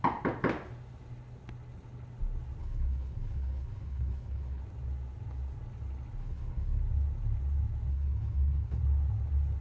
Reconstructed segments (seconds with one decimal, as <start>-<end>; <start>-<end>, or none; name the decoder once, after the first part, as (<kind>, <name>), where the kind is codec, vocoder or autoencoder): 2.6-4.6 (codec, HILCodec); 6.2-6.8; 7.9-8.8